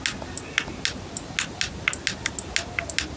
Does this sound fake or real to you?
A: real